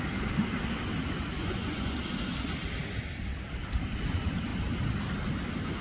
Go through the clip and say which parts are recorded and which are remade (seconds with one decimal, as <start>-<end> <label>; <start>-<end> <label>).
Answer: 0.0-1.4 recorded; 1.4-2.0 remade; 2.0-5.8 recorded